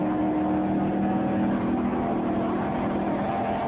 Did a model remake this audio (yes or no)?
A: no